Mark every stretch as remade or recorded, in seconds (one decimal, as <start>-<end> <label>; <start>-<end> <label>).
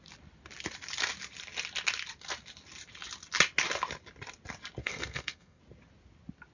0.0-4.8 recorded; 4.8-5.6 remade; 5.6-6.5 recorded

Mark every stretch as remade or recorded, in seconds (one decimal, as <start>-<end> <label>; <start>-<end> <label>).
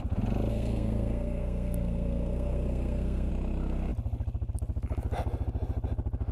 0.0-0.5 recorded; 0.5-3.3 remade; 3.3-6.3 recorded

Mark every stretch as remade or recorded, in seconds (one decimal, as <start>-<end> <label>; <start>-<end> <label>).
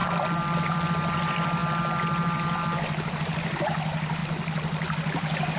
0.0-5.6 recorded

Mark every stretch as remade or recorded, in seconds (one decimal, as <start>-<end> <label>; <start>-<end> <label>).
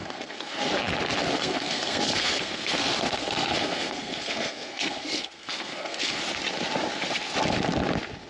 0.0-0.7 remade; 0.7-1.2 recorded; 1.2-6.2 remade; 6.2-8.3 recorded